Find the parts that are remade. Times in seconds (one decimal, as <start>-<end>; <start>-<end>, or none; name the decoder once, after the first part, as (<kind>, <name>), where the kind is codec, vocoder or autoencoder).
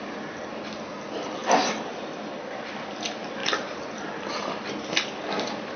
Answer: none